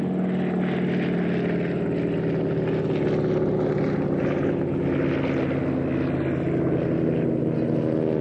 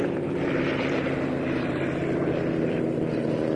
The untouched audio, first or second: first